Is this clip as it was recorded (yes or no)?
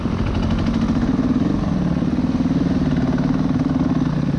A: yes